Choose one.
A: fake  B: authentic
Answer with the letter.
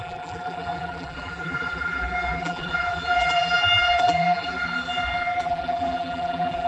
A